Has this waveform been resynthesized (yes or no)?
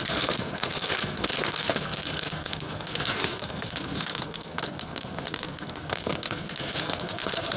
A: yes